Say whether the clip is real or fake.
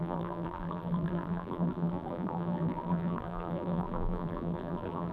fake